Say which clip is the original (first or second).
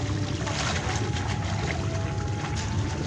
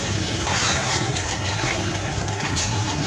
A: first